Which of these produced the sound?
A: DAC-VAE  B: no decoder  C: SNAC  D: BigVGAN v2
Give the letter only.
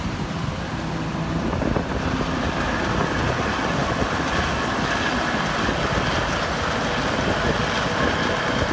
B